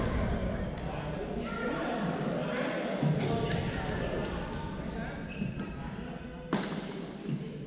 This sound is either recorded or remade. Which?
recorded